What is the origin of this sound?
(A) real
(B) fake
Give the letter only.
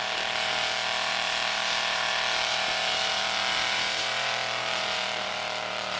B